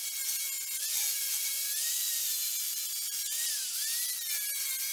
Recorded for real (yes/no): yes